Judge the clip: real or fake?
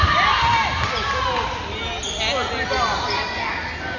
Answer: real